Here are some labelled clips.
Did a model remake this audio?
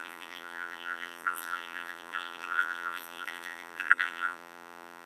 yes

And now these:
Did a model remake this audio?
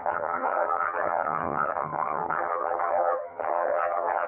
yes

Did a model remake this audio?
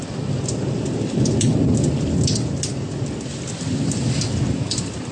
no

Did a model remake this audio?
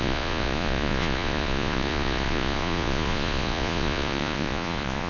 yes